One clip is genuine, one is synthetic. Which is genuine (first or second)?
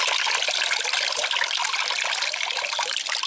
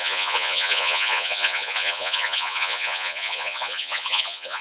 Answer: first